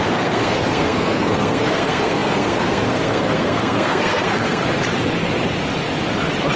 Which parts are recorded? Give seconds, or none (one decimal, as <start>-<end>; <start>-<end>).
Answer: 4.6-6.6